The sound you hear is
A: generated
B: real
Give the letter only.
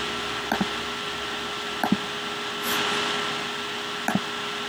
B